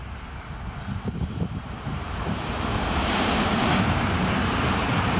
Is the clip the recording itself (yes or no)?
no